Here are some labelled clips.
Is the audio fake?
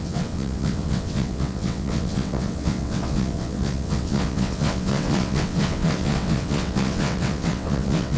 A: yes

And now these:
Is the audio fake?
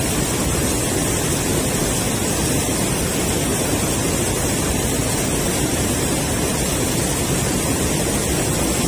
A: no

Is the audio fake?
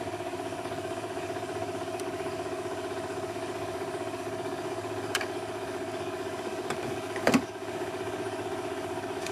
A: yes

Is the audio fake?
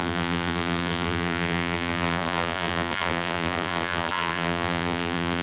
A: yes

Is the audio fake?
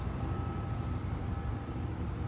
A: no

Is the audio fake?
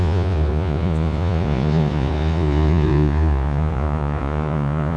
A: yes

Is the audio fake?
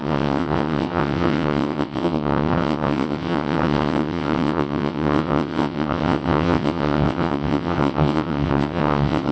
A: yes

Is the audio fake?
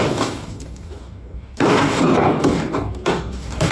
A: yes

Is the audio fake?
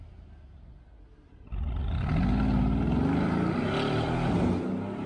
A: no